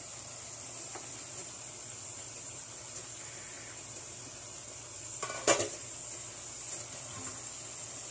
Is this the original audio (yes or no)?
yes